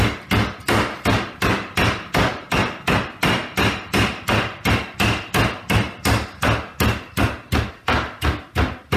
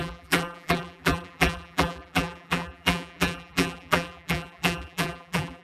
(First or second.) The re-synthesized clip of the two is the second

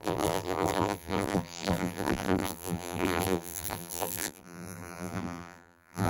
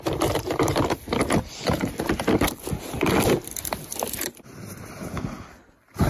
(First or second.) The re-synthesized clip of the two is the first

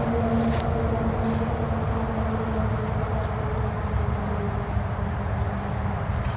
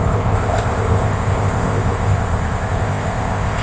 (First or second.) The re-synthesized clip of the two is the second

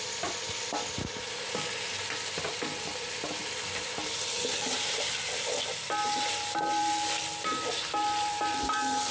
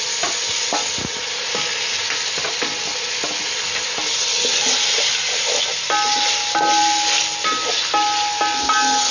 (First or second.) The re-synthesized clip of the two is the first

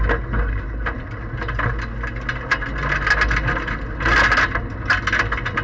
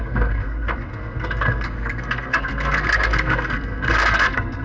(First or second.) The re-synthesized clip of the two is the second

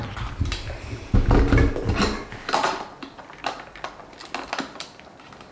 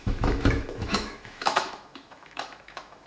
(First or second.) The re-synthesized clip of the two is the second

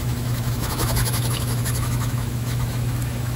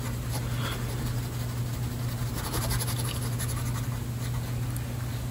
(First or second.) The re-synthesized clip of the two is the first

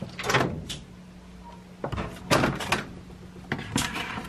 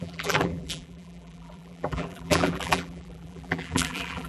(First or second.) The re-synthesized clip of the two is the second